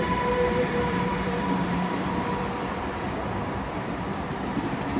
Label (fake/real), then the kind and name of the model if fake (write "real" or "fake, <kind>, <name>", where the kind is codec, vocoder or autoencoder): fake, vocoder, BigVGAN v2